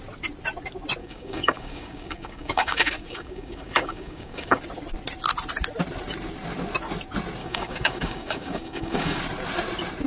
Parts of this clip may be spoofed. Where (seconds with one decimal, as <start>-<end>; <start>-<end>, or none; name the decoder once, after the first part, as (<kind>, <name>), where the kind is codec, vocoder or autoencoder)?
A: 1.0-4.6 (codec, DAC); 7.4-9.2